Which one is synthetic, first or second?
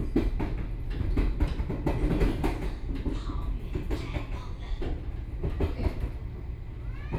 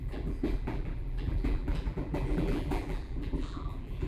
second